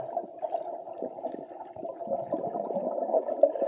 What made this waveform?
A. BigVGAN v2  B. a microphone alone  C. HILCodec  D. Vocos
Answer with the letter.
B